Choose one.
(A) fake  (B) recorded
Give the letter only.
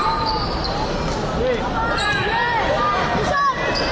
B